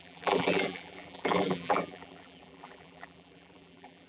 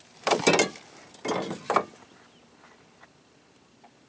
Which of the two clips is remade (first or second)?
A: first